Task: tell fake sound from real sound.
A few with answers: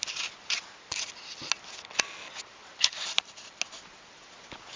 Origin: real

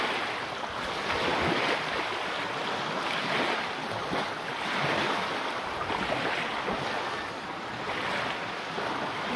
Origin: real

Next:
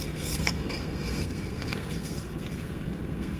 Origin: fake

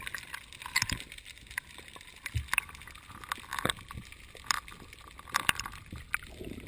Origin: real